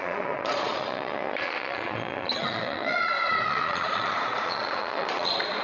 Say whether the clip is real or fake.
fake